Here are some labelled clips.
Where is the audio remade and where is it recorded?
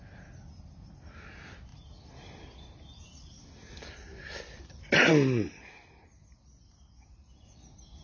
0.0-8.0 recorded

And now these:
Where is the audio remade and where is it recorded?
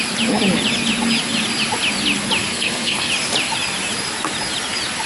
0.0-2.5 recorded; 2.5-3.1 remade; 3.1-5.1 recorded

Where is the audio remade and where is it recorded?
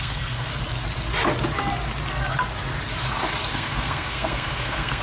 0.0-0.5 remade; 0.5-3.5 recorded; 3.5-5.0 remade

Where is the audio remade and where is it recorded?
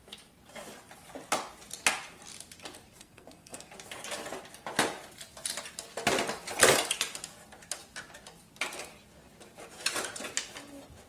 0.0-3.0 recorded; 3.0-3.7 remade; 3.7-11.1 recorded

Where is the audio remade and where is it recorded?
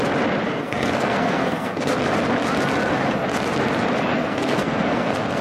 0.0-0.5 recorded; 0.5-2.0 remade; 2.0-4.1 recorded; 4.1-5.4 remade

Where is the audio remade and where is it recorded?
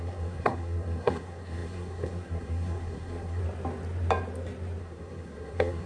0.0-3.4 remade; 3.4-4.8 recorded; 4.8-5.9 remade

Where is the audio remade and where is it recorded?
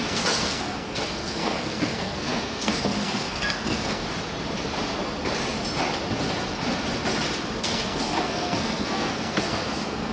0.0-4.0 remade; 4.0-7.6 recorded; 7.6-10.1 remade